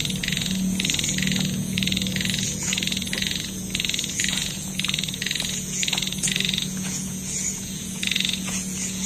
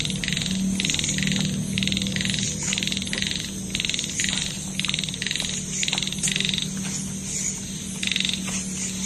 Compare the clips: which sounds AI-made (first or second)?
first